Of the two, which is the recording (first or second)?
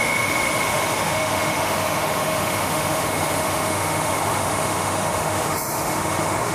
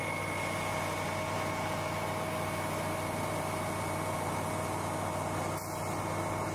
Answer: second